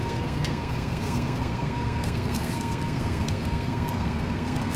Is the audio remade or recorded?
remade